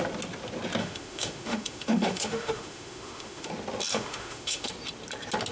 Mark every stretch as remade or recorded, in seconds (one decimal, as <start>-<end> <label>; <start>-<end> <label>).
0.0-0.8 recorded; 0.8-3.5 remade; 3.5-3.9 recorded; 3.9-4.7 remade; 4.7-5.5 recorded